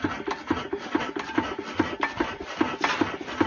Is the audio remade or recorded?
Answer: recorded